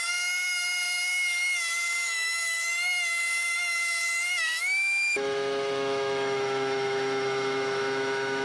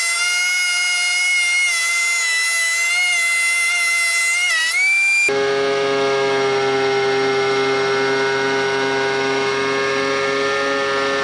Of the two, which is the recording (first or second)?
second